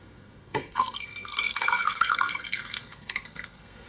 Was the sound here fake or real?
fake